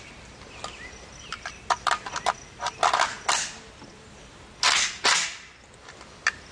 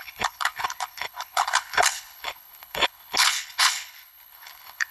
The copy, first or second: second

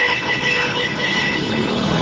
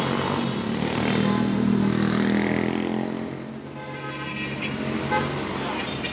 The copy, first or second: first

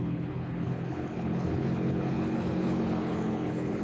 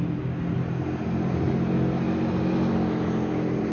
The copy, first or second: first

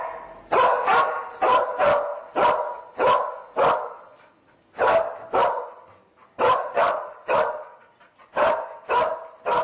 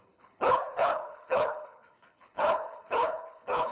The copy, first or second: second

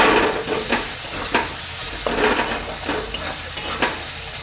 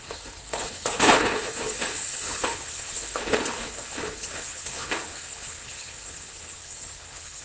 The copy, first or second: second